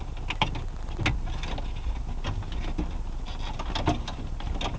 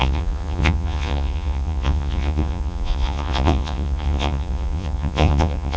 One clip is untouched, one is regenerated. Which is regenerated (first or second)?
second